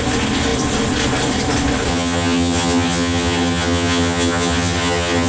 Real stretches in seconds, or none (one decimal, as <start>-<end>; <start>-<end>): 0.0-1.9